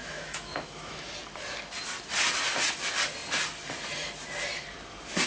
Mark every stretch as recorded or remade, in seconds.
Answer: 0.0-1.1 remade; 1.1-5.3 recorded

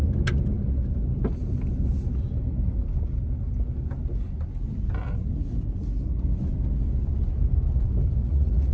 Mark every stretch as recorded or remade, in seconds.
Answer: 0.0-8.2 recorded; 8.2-8.7 remade

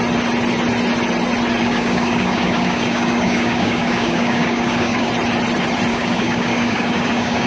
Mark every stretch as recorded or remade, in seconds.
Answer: 0.0-1.6 recorded; 1.6-5.1 remade; 5.1-5.9 recorded; 5.9-7.5 remade

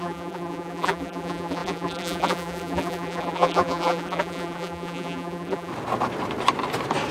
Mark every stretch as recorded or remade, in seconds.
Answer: 0.0-5.7 remade; 5.7-7.1 recorded